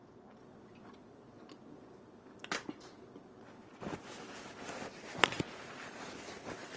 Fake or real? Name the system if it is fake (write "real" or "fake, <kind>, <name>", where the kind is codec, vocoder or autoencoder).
real